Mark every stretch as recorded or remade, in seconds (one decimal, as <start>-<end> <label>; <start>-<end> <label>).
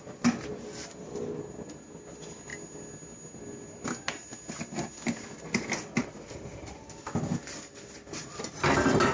0.0-6.0 recorded; 6.0-6.8 remade; 6.8-9.1 recorded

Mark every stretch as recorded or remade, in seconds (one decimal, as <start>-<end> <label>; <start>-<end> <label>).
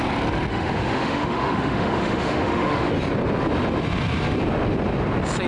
0.0-0.5 recorded; 0.5-2.9 remade; 2.9-5.5 recorded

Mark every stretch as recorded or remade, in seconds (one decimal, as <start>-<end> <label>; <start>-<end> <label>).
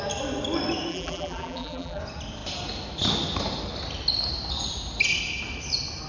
0.0-0.9 recorded; 0.9-2.0 remade; 2.0-6.1 recorded